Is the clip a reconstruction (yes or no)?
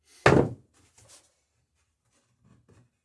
no